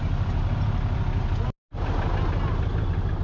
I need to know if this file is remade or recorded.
recorded